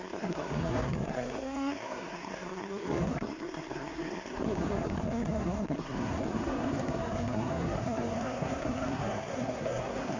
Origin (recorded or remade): remade